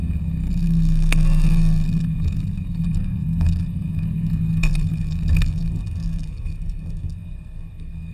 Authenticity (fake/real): fake